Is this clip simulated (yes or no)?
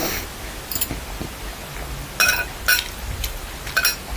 no